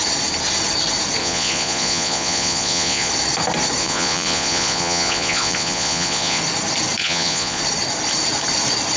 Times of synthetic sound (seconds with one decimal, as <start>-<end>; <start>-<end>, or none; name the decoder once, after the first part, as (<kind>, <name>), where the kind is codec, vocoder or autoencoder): 1.2-3.1 (vocoder, Vocos); 3.8-6.4; 7.0-7.6